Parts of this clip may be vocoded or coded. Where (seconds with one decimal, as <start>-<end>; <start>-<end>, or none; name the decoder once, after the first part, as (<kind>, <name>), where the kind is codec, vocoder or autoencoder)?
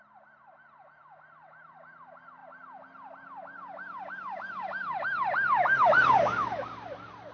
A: none